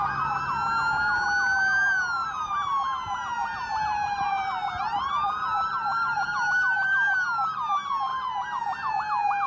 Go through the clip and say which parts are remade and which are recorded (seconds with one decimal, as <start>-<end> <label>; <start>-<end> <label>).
0.0-2.2 recorded; 2.2-6.5 remade; 6.5-8.1 recorded; 8.1-8.9 remade; 8.9-9.5 recorded